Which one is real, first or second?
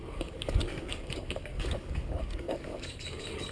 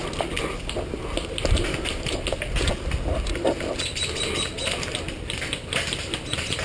second